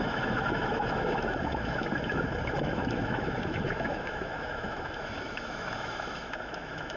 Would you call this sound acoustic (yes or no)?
no